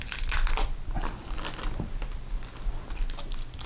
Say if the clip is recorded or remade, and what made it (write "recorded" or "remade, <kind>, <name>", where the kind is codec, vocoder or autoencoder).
remade, vocoder, BigVGAN v2